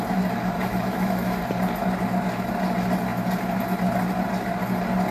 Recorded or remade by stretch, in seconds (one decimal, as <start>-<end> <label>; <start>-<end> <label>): 0.0-0.7 recorded; 0.7-1.4 remade; 1.4-5.1 recorded